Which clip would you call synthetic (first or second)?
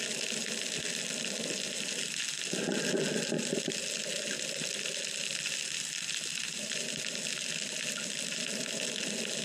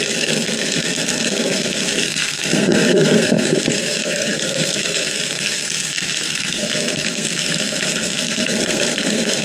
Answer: second